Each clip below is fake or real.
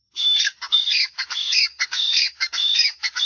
fake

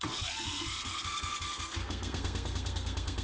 fake